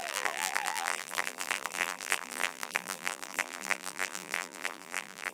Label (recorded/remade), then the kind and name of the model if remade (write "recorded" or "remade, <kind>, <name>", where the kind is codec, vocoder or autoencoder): remade, vocoder, BigVGAN v2